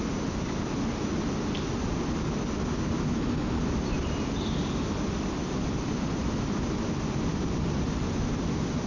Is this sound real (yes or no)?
yes